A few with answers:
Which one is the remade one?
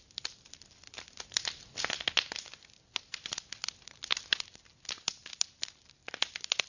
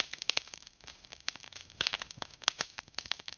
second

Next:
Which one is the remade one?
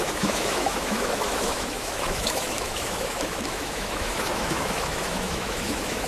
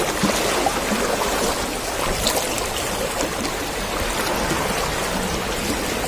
first